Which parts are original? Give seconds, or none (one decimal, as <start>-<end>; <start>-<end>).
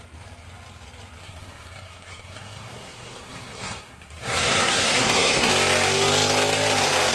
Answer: 0.0-1.2; 5.5-7.1